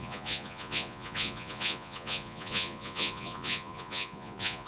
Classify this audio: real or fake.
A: fake